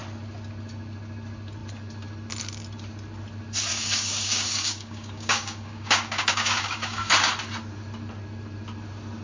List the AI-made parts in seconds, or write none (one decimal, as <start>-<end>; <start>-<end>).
3.7-7.1